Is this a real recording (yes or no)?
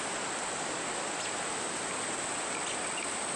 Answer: yes